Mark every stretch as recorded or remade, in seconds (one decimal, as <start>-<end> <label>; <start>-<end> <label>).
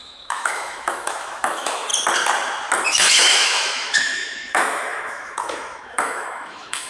0.0-1.9 remade; 1.9-2.9 recorded; 2.9-6.9 remade